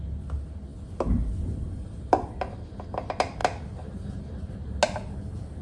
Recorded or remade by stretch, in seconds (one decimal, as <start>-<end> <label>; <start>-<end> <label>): 0.0-5.6 recorded